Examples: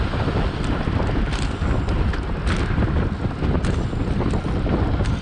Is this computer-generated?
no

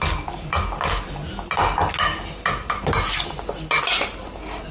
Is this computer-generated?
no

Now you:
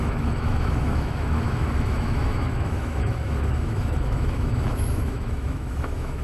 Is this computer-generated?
yes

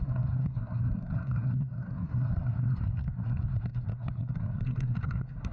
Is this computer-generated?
yes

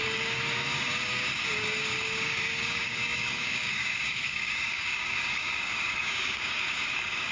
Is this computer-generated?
yes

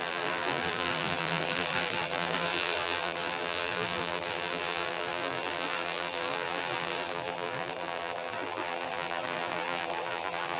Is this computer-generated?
yes